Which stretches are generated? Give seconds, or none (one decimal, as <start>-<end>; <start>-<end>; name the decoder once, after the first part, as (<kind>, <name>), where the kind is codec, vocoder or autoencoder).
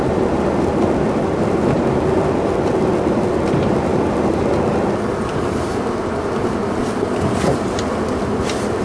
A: 5.7-8.8 (vocoder, BigVGAN v2)